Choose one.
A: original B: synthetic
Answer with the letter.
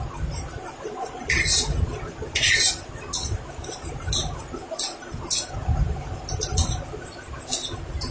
A